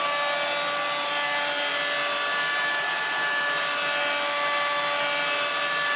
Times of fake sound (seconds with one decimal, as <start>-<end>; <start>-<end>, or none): none